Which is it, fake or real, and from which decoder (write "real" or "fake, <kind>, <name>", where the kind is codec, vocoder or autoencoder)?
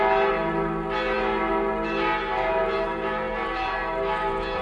real